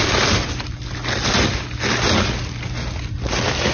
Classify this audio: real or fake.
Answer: real